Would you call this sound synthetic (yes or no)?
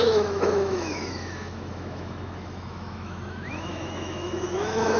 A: yes